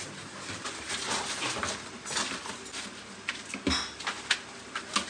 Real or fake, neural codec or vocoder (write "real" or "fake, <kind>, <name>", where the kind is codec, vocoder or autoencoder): real